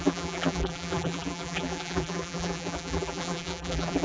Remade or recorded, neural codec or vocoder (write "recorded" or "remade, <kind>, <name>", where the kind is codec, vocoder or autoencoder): remade, vocoder, BigVGAN v2